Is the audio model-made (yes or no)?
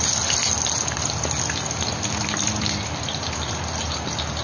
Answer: no